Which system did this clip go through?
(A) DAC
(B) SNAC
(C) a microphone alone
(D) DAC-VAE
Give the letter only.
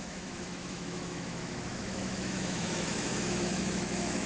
D